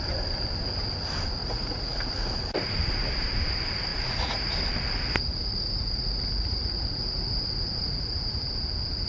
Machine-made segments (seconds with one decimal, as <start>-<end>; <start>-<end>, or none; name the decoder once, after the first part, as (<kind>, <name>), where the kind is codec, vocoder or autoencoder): 1.4-2.3 (vocoder, Vocos); 3.9-4.5; 5.3-8.4